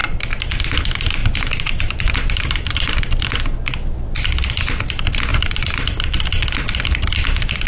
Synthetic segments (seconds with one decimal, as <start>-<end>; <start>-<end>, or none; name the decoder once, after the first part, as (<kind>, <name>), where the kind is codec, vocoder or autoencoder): 0.0-0.7 (vocoder, BigVGAN v2); 1.2-3.0; 5.3-6.2